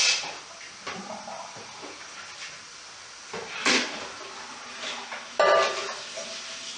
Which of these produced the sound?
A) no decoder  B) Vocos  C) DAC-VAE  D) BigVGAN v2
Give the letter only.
A